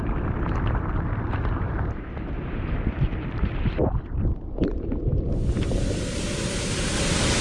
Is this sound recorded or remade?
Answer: recorded